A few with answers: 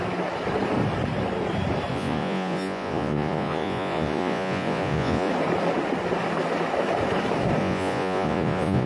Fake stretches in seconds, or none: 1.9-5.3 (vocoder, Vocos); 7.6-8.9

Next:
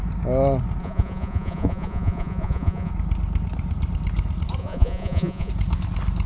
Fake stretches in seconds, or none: 0.8-2.9 (vocoder, Vocos); 4.6-5.5

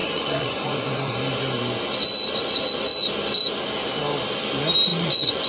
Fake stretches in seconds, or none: 0.0-1.1 (vocoder, Vocos); 4.9-5.5

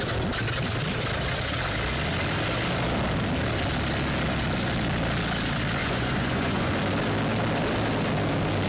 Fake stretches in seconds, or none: 5.8-6.7 (vocoder, Vocos)

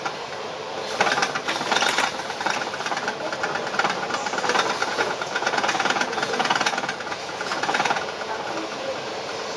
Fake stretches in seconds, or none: 4.8-8.4 (vocoder, Vocos)

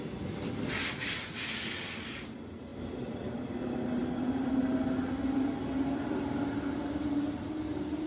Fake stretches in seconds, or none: none

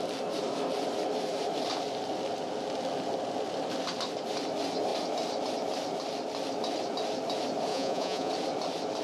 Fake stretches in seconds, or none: 7.7-8.3 (vocoder, Vocos)

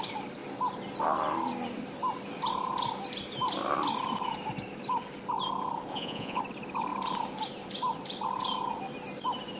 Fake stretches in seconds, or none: 5.9-6.4 (vocoder, Vocos)